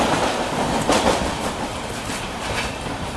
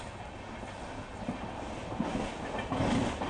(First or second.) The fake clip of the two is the first